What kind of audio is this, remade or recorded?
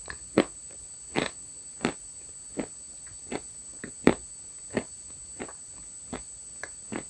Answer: remade